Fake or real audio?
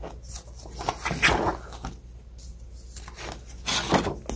real